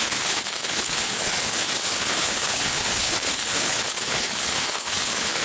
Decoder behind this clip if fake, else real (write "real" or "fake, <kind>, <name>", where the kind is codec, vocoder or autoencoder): fake, codec, HILCodec